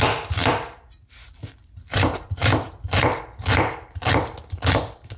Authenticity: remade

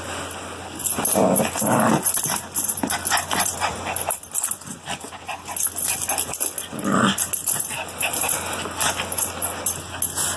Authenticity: recorded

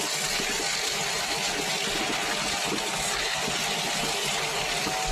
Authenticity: recorded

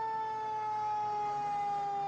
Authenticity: recorded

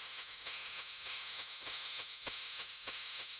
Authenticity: remade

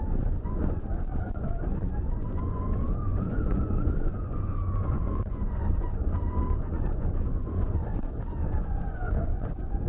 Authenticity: remade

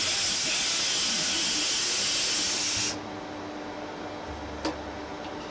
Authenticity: recorded